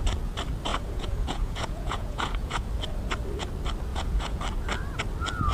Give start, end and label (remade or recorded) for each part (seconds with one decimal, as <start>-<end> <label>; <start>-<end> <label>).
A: 0.0-0.7 recorded; 0.7-2.7 remade; 2.7-3.9 recorded; 3.9-4.4 remade; 4.4-5.5 recorded